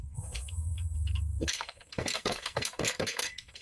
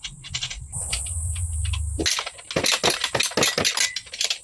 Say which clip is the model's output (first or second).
first